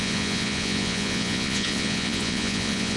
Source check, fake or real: fake